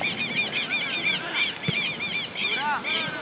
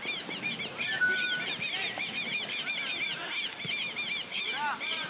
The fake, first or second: second